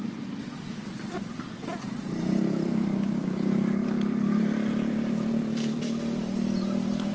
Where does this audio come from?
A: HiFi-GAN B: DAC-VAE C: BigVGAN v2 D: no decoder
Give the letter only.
C